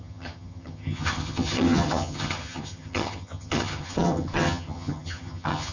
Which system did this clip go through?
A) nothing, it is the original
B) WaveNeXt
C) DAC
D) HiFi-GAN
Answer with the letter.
D